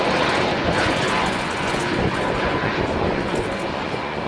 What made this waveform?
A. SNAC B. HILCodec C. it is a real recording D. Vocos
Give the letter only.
D